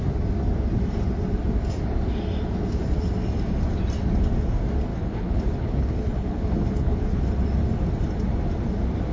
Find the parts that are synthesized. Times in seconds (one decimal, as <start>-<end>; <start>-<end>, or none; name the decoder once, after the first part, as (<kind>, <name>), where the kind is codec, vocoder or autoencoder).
4.9-7.3 (codec, HILCodec)